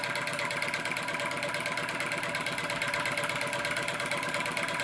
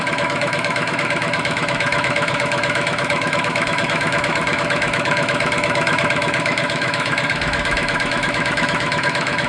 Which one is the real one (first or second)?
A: first